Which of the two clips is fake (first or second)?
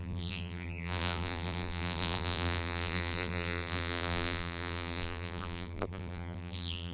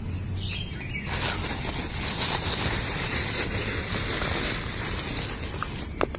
first